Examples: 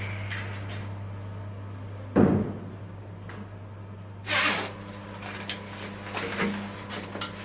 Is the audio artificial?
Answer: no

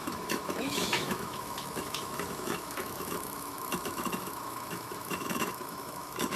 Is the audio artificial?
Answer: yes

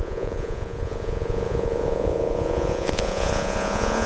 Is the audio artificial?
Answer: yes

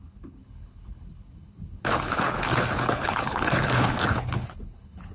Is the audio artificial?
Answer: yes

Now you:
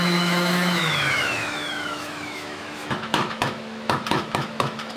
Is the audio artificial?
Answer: yes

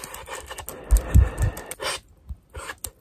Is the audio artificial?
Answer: no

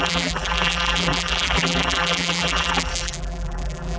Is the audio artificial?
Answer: yes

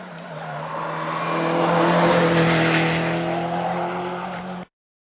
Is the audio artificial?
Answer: no